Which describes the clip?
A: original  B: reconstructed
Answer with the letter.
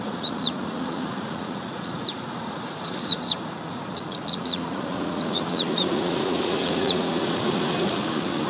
B